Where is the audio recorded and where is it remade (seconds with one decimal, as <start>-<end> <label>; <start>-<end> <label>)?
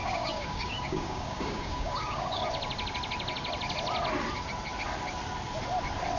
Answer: 0.0-2.4 remade; 2.4-6.2 recorded